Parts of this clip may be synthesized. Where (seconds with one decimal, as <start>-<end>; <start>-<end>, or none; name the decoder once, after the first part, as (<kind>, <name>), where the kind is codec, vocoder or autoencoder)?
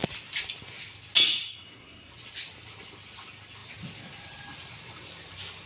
1.5-2.1 (codec, SNAC)